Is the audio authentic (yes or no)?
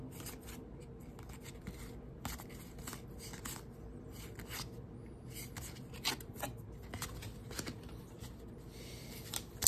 yes